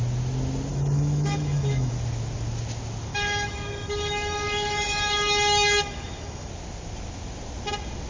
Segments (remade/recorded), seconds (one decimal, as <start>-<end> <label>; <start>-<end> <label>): 0.0-0.7 recorded; 0.7-1.9 remade; 1.9-3.1 recorded; 3.1-6.5 remade; 6.5-8.1 recorded